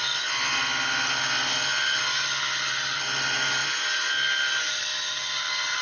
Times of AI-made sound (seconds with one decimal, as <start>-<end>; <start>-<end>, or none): none